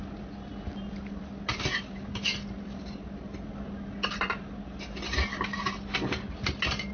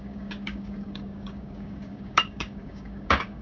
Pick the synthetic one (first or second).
second